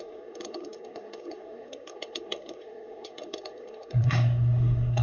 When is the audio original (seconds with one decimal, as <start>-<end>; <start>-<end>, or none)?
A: none